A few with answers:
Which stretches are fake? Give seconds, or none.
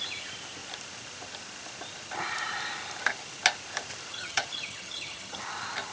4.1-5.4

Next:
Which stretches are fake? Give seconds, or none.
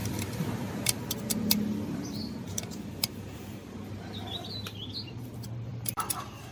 0.0-3.9; 5.7-6.5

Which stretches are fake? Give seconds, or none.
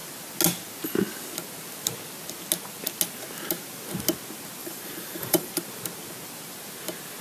4.6-5.5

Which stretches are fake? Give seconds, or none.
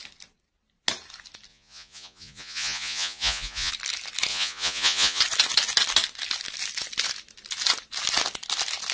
1.5-3.7; 4.3-5.2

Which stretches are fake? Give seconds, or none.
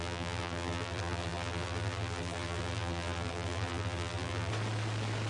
0.0-4.5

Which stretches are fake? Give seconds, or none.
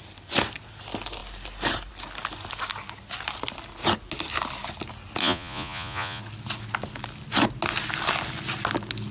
5.2-6.2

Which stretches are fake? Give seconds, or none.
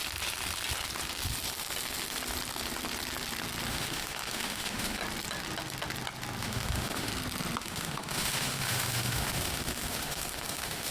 3.7-5.0; 6.4-7.1; 7.6-10.9